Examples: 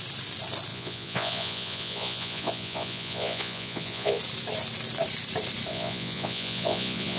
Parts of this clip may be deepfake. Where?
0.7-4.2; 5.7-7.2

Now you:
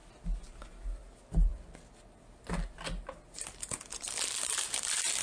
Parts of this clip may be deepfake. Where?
none

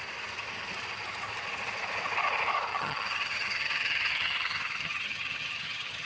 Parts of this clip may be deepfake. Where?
2.7-6.1